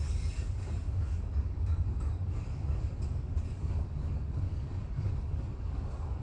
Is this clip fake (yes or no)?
yes